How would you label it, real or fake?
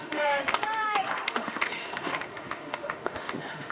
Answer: fake